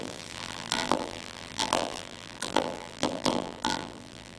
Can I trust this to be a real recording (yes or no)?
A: no